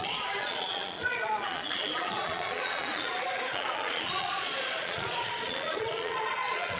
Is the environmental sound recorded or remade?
remade